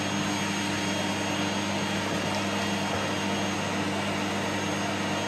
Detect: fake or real real